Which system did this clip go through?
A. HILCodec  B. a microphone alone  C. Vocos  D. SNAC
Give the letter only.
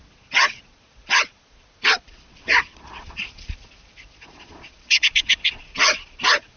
C